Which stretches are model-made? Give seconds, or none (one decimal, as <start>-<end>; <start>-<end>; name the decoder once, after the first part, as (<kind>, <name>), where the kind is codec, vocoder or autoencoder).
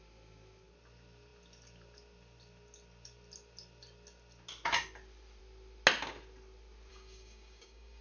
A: 6.9-8.0 (codec, DAC)